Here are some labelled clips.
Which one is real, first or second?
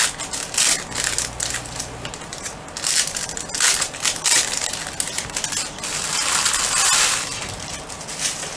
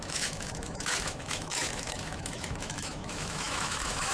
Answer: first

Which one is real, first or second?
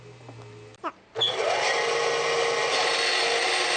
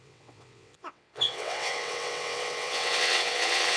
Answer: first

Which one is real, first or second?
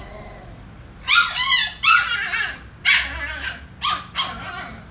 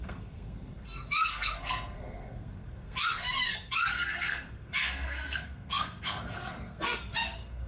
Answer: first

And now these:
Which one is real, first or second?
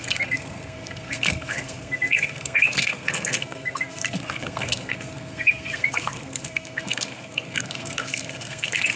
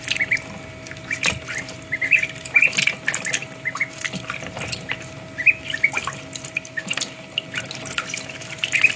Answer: second